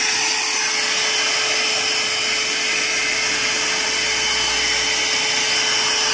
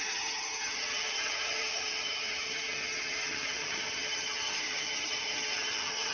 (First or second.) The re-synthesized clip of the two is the second